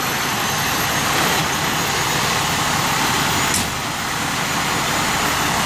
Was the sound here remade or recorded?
recorded